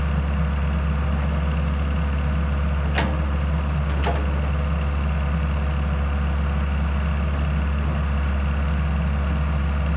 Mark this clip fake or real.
real